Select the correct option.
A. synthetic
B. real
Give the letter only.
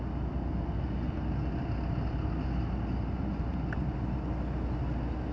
B